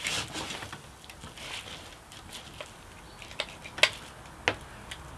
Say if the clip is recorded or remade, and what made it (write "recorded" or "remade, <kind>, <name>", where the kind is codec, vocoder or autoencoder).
recorded